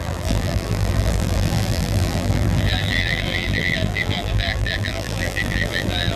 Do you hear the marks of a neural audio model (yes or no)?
yes